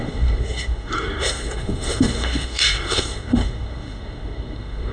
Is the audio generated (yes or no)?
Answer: yes